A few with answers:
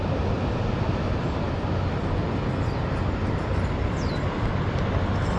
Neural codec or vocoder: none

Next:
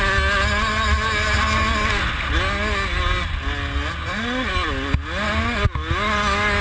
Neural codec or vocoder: none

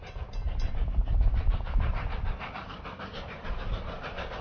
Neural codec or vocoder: none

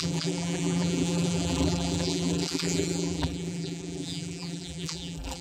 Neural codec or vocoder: vocoder, BigVGAN v2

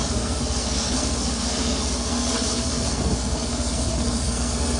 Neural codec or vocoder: codec, SNAC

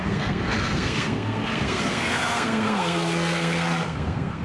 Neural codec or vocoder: codec, SNAC